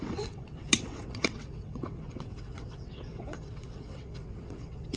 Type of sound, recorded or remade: remade